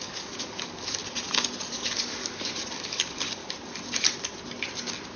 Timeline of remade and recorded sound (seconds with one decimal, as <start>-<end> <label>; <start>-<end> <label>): 0.0-1.0 remade; 1.0-1.7 recorded; 1.7-3.4 remade; 3.4-5.2 recorded